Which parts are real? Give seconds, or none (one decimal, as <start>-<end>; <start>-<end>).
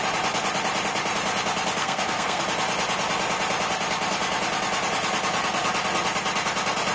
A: 0.0-1.8; 2.4-6.9